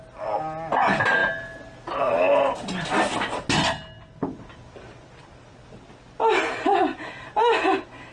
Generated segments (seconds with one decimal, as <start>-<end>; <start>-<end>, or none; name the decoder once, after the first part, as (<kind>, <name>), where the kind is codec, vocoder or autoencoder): none